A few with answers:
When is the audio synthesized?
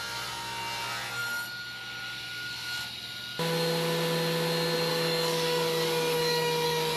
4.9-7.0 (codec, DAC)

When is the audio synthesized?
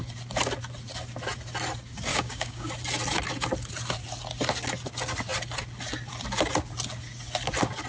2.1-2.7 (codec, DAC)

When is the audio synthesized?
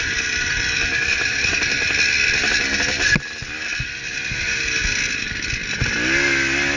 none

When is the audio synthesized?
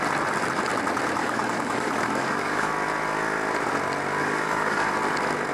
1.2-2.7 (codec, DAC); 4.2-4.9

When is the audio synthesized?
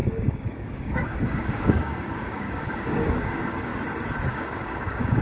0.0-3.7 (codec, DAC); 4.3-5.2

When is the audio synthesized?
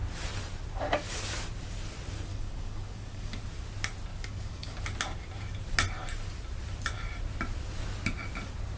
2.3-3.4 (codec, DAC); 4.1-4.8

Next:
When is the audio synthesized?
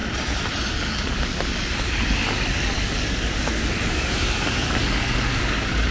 0.7-5.9 (codec, DAC)